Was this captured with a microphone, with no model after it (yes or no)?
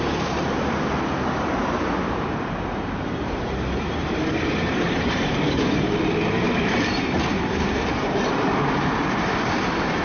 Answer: no